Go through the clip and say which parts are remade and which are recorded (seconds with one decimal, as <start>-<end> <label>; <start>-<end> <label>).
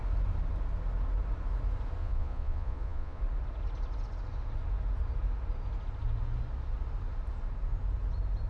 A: 0.0-2.0 recorded; 2.0-3.2 remade; 3.2-8.5 recorded